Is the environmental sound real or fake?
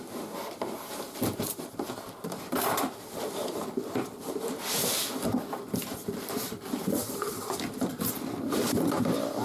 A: fake